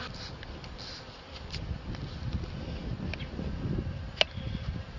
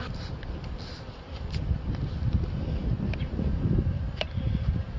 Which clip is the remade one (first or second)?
second